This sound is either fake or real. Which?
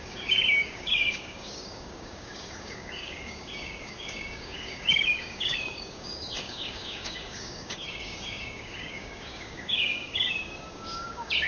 fake